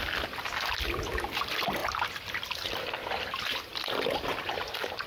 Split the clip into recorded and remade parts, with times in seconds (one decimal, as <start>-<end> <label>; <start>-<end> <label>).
0.0-3.7 recorded; 3.7-4.3 remade; 4.3-5.1 recorded